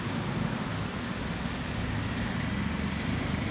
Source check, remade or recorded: recorded